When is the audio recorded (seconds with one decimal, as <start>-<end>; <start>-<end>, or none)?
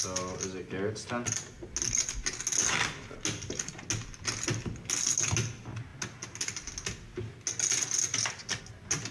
0.0-9.1